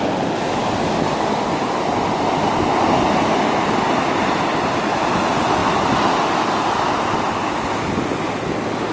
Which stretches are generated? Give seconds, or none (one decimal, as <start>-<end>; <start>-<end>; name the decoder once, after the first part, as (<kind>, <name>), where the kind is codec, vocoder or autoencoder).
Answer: none